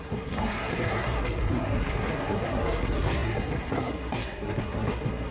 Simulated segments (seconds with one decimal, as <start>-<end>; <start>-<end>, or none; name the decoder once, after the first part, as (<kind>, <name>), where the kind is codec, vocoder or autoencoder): 0.0-5.3 (codec, SNAC)